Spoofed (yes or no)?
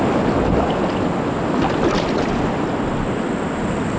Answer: no